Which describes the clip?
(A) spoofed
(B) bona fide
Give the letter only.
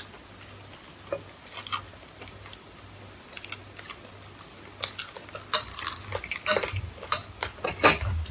B